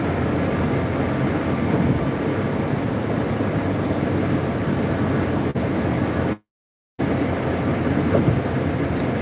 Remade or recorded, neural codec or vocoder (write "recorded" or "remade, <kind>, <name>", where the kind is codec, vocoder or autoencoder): recorded